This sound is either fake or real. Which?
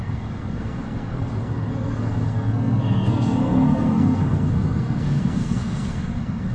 fake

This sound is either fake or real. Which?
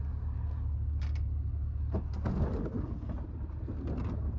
real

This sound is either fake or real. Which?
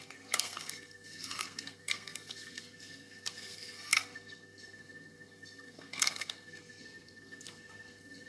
fake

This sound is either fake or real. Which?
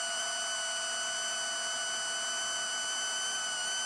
real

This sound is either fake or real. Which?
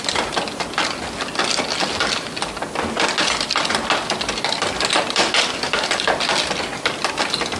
real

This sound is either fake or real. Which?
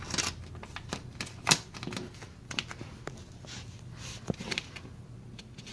real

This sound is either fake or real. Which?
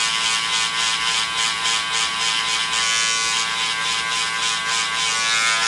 real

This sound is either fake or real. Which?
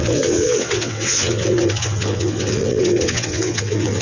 fake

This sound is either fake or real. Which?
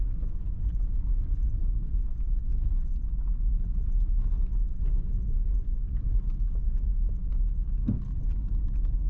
real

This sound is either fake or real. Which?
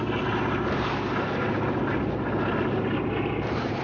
real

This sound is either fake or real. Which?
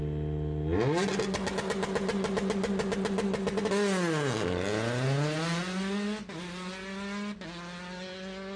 real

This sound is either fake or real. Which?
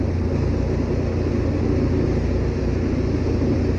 real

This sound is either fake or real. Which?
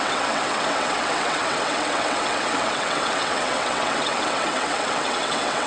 fake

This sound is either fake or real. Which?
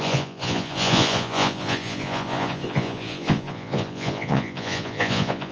fake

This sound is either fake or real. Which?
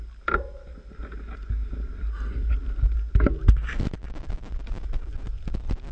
real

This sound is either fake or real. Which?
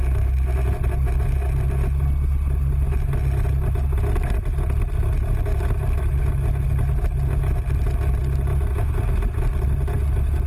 real